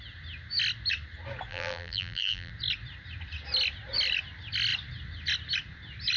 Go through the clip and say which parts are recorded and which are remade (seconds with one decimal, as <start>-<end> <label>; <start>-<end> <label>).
0.0-1.5 recorded; 1.5-2.5 remade; 2.5-6.2 recorded